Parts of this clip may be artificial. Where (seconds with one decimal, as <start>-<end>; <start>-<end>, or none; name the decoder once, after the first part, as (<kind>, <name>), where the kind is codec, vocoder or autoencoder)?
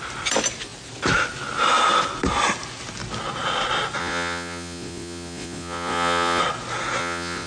4.0-6.4 (vocoder, Vocos); 7.0-7.5